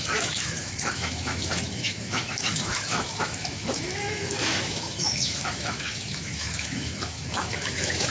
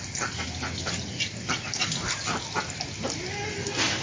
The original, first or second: second